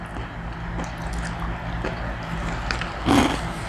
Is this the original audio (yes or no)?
yes